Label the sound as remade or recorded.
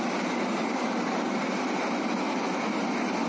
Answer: recorded